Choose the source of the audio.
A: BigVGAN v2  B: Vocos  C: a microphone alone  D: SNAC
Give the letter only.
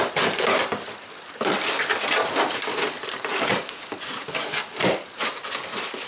A